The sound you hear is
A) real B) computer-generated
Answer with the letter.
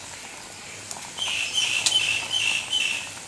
A